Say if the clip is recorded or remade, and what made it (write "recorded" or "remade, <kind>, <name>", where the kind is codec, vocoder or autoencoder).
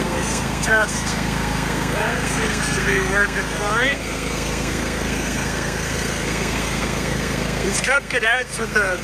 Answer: remade, codec, SNAC